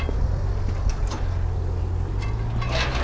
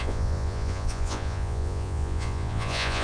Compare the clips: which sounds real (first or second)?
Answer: first